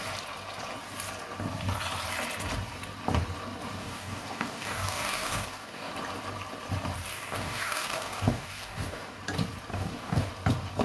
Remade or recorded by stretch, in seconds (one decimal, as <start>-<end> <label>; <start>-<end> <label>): 0.0-3.8 recorded; 3.8-5.9 remade; 5.9-7.1 recorded; 7.1-9.2 remade; 9.2-9.7 recorded; 9.7-10.3 remade; 10.3-10.8 recorded